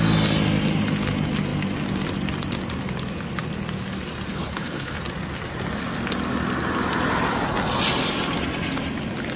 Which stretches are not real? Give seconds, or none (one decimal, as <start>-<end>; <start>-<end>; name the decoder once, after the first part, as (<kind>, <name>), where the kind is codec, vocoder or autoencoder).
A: 4.3-5.0 (codec, HILCodec)